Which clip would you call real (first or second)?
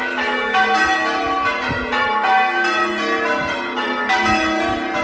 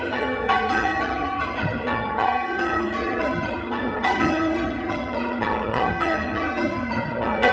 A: first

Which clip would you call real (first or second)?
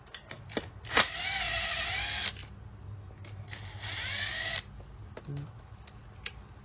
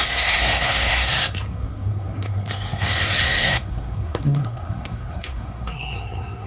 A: first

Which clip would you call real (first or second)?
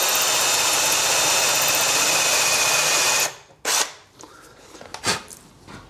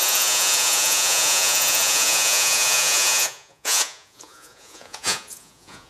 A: first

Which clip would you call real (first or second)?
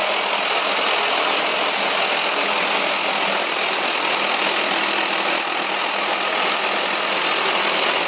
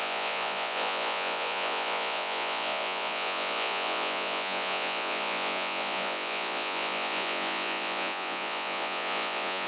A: first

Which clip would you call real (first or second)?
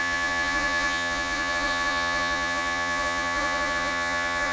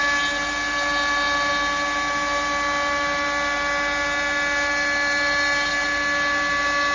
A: second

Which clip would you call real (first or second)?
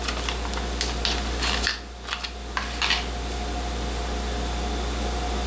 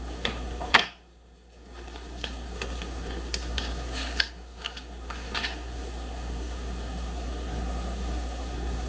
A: first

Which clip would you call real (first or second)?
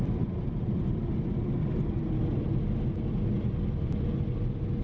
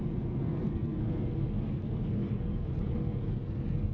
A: first